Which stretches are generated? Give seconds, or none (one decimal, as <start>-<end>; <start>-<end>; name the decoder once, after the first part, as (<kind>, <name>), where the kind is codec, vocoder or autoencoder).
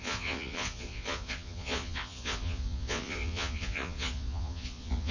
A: 0.0-5.1 (vocoder, Vocos)